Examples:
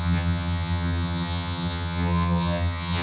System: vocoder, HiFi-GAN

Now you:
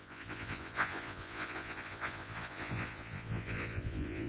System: vocoder, Vocos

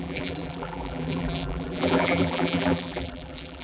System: vocoder, BigVGAN v2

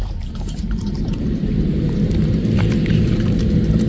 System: vocoder, BigVGAN v2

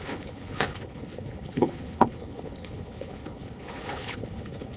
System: codec, HILCodec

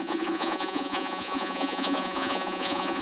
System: vocoder, Vocos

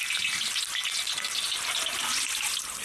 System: none